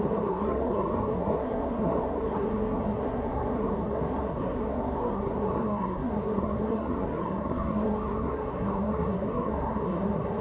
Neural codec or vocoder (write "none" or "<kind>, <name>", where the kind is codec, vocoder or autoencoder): codec, SNAC